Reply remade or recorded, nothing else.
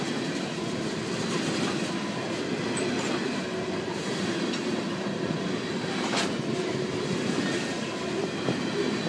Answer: recorded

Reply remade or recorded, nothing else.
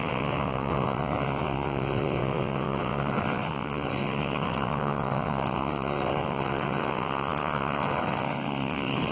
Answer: remade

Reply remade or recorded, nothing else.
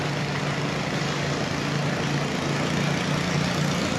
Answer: recorded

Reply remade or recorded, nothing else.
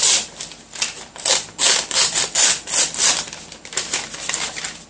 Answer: recorded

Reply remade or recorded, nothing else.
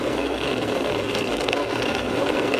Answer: remade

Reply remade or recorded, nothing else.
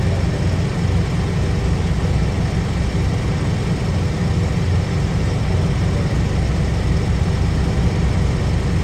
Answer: recorded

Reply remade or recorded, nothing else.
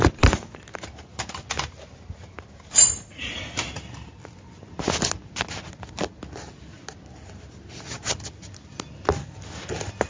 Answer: recorded